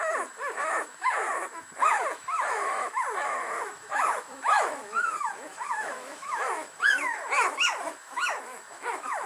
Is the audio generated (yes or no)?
yes